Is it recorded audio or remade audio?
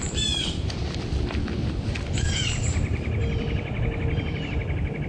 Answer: remade